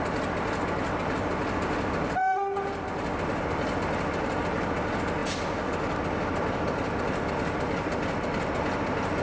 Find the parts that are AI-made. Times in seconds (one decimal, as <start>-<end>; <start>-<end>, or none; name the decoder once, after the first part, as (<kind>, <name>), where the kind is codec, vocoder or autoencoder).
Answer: none